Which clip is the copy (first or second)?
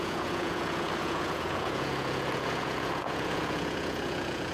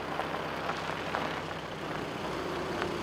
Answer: first